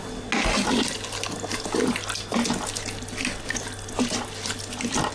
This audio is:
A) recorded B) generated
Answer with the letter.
A